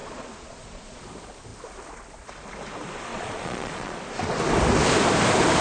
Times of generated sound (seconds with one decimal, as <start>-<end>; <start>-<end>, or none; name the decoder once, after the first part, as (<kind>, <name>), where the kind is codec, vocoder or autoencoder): 0.0-1.0 (vocoder, Vocos); 3.1-4.0